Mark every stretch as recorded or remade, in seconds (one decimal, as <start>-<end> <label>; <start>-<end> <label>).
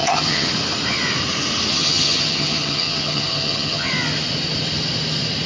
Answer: 0.0-0.5 remade; 0.5-1.7 recorded; 1.7-3.9 remade; 3.9-5.5 recorded